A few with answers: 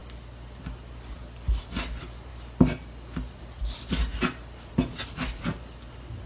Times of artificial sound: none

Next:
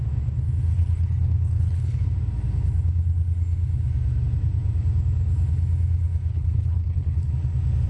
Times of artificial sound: 0.7-2.0 (codec, HILCodec); 6.3-7.3